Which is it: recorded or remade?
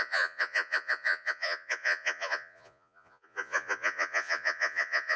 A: remade